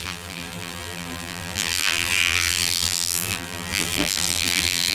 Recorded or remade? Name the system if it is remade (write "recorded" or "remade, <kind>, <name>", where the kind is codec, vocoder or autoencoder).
remade, vocoder, BigVGAN v2